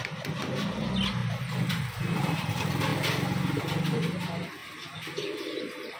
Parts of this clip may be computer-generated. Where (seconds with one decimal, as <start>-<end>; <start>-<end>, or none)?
0.0-2.9; 3.6-6.0